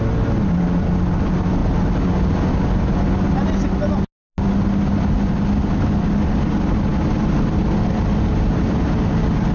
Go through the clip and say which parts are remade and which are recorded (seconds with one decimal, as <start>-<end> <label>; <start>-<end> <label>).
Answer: 0.0-9.5 recorded